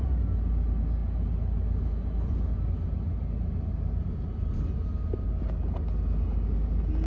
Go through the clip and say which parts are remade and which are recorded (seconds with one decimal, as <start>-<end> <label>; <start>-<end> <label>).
0.0-7.1 recorded